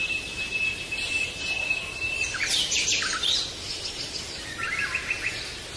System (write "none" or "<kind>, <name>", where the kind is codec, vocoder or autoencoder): none